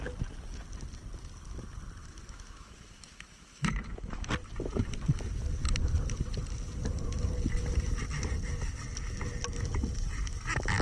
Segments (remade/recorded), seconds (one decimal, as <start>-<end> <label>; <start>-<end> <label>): 0.0-2.0 recorded; 2.0-4.3 remade; 4.3-10.8 recorded